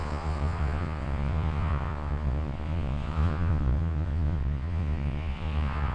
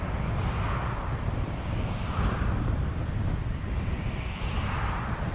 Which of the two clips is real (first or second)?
second